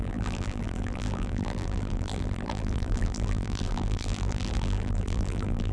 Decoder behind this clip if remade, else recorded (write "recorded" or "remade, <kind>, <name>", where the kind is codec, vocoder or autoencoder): remade, vocoder, BigVGAN v2